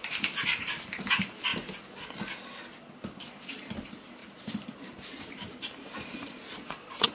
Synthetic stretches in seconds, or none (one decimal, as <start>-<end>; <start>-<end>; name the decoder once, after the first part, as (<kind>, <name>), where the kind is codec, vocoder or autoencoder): 0.0-1.5 (vocoder, BigVGAN v2); 3.5-7.1